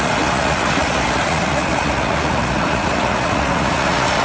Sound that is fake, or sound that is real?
fake